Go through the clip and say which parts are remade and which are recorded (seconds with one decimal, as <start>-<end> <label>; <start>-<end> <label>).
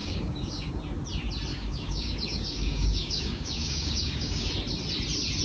0.0-0.7 remade; 0.7-1.5 recorded; 1.5-4.5 remade; 4.5-5.4 recorded